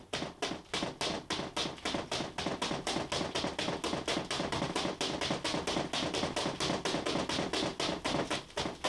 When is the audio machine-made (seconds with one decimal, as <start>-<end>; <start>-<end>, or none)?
none